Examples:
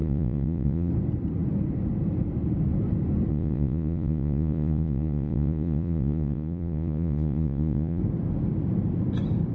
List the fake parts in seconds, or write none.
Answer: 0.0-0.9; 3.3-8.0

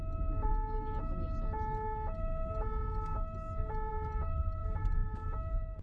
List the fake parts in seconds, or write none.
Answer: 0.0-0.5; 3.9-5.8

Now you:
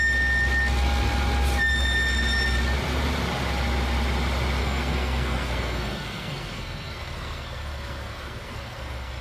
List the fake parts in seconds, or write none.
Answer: 4.6-9.2

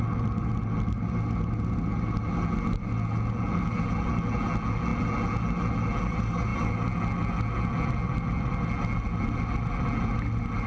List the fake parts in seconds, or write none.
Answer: none

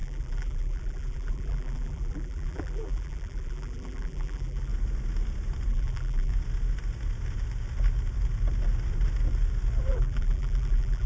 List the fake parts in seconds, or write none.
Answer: 0.0-4.7; 5.7-6.3; 9.9-11.1

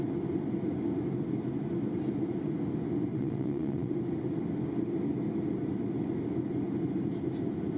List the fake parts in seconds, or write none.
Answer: 3.1-3.9

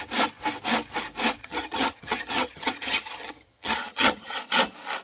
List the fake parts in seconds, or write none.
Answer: 1.4-4.4

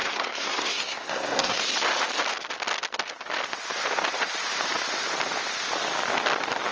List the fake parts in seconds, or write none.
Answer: 0.0-1.6